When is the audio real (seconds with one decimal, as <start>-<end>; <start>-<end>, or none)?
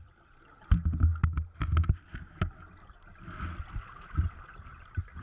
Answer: 1.1-3.8; 4.7-5.2